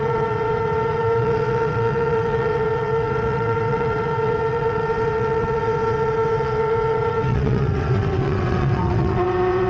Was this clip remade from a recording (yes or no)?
yes